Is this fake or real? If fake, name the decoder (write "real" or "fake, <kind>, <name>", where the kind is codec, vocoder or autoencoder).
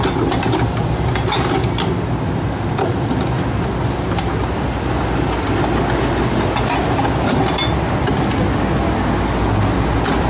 real